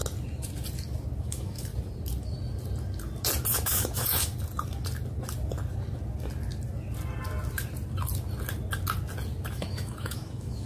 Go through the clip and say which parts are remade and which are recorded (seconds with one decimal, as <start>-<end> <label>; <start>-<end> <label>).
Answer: 0.0-1.2 recorded; 1.2-1.7 remade; 1.7-3.5 recorded; 3.5-4.3 remade; 4.3-9.5 recorded; 9.5-10.7 remade